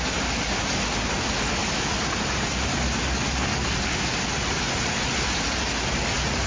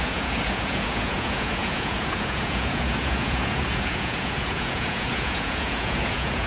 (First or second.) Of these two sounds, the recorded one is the first